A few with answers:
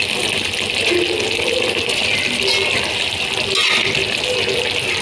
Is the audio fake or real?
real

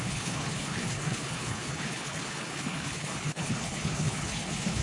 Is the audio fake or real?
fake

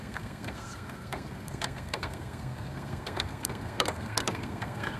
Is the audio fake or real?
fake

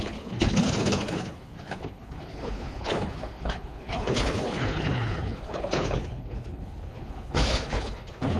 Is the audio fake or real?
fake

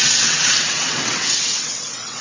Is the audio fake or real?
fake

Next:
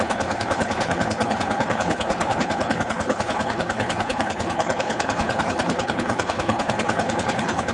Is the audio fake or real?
fake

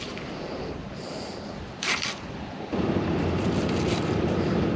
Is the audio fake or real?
fake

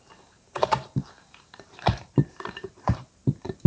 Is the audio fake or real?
fake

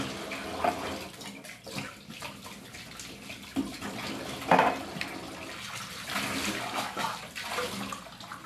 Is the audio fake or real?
real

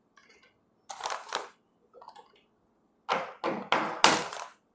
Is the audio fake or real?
real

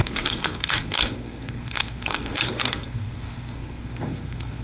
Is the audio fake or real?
fake